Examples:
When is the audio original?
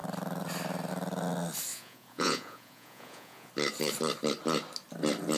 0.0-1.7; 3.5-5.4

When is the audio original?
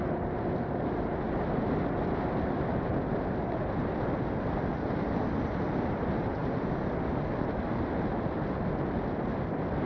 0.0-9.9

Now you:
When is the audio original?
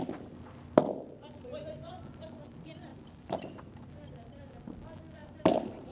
0.0-2.9; 3.8-5.2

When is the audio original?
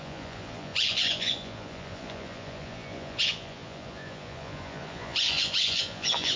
none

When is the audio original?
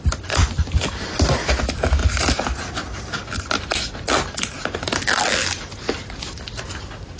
2.0-6.3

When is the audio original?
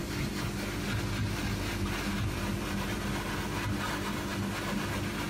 0.0-5.3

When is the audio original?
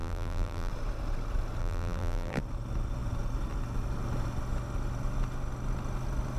0.7-1.6; 2.4-6.4